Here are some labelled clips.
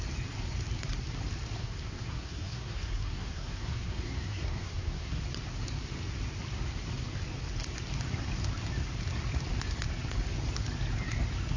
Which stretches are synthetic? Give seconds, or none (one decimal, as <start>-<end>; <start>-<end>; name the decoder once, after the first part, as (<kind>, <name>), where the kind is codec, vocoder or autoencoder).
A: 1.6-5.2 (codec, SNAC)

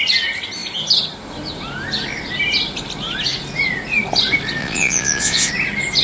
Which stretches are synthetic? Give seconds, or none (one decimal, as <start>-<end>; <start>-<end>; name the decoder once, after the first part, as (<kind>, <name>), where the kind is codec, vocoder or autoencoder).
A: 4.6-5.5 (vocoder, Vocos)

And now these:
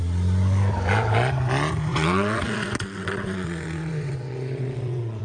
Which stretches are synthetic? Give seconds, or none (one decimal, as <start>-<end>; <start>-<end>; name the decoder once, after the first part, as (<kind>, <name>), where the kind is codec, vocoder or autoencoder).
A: 1.9-5.2 (vocoder, WaveNeXt)

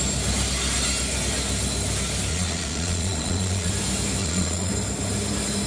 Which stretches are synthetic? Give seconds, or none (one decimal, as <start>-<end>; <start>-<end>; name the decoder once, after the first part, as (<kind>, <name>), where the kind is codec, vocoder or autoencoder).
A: 2.3-3.7 (vocoder, Vocos); 4.2-4.7

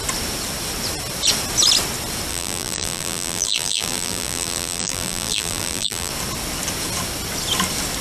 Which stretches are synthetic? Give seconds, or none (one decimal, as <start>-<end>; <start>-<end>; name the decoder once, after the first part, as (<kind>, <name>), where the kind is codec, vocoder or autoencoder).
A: 2.3-6.1 (vocoder, BigVGAN v2)

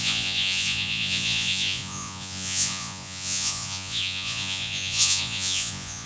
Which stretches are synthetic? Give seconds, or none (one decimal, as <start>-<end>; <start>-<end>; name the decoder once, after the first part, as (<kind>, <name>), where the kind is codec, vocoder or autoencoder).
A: 0.0-6.1 (vocoder, Vocos)

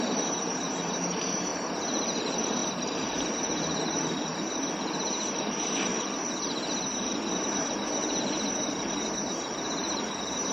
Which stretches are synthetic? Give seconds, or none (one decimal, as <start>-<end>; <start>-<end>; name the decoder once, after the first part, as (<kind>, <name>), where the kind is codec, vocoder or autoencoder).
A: 0.0-1.5 (vocoder, BigVGAN v2); 2.2-4.3; 5.4-5.9; 8.2-10.5